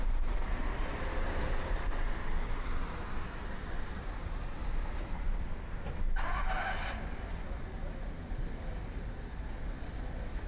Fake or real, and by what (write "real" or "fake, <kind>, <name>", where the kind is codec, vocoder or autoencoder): real